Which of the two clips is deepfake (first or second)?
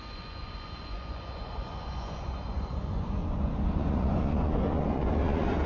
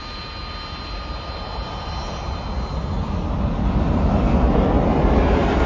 first